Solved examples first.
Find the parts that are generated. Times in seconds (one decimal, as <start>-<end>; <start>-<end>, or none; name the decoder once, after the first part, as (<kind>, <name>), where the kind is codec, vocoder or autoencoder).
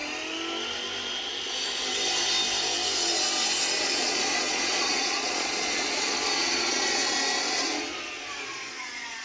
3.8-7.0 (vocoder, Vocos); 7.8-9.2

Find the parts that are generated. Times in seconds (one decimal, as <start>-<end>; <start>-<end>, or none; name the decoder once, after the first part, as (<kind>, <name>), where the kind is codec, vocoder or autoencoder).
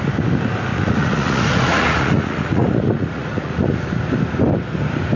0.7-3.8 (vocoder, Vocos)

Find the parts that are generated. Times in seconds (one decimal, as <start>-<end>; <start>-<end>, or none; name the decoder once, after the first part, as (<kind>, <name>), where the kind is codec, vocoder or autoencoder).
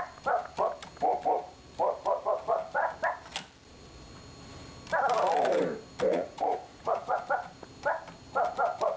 6.1-7.2 (vocoder, Vocos)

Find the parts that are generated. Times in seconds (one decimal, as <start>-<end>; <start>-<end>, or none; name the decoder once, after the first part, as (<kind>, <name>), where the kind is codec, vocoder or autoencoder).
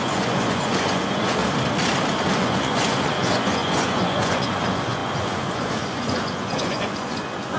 0.0-1.4 (vocoder, Vocos); 2.4-7.6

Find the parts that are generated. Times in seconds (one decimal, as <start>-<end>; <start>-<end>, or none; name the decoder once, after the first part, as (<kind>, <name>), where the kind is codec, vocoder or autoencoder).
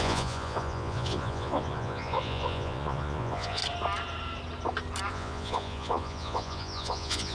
0.0-3.6 (vocoder, Vocos); 5.1-7.3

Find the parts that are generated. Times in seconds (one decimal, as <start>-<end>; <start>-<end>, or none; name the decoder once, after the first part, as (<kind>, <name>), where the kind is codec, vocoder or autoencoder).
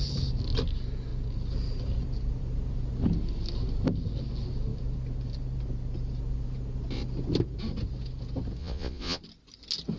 8.6-9.2 (vocoder, Vocos)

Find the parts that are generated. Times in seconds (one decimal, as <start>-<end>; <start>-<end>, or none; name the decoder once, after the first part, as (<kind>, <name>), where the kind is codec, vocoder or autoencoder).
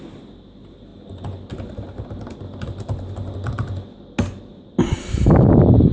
none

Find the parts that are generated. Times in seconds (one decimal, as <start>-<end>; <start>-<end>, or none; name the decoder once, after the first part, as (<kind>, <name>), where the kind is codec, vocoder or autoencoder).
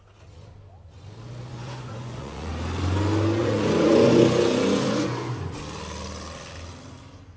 1.5-2.5 (vocoder, Vocos); 3.4-5.6